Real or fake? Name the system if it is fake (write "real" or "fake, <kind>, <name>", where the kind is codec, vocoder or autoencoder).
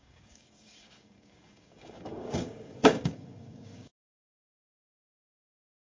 fake, codec, DAC